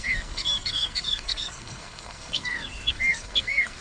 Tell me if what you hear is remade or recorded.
remade